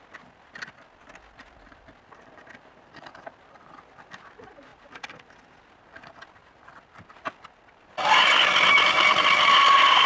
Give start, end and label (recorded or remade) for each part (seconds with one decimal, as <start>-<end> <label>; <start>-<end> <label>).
0.0-10.1 remade